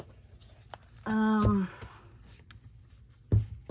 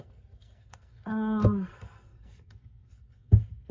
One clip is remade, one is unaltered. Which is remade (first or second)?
second